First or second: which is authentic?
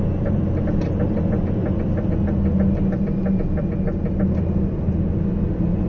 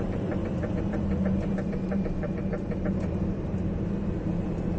first